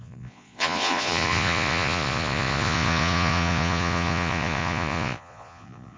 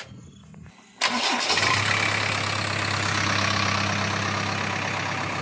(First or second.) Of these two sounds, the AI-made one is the first